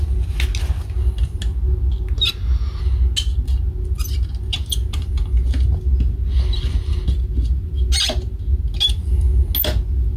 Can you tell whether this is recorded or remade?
recorded